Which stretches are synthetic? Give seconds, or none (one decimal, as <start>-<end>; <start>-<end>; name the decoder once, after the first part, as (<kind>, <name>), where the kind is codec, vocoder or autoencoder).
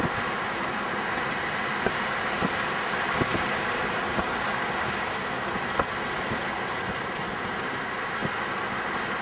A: 8.2-9.2 (vocoder, BigVGAN v2)